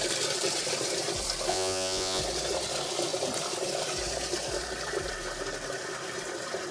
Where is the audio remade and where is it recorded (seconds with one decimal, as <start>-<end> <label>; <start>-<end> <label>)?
0.0-1.5 recorded; 1.5-2.2 remade; 2.2-6.7 recorded